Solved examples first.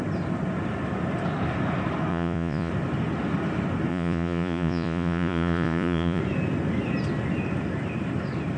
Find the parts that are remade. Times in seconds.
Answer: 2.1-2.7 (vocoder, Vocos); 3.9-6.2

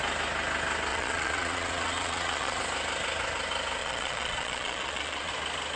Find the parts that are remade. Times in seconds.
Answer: 0.9-2.6 (vocoder, Vocos); 3.8-5.3

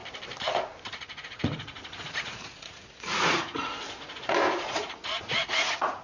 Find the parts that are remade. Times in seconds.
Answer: 0.9-6.0 (vocoder, Vocos)